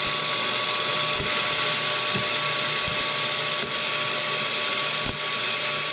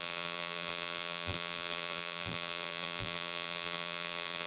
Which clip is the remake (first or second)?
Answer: second